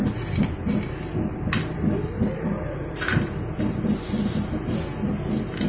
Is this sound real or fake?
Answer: real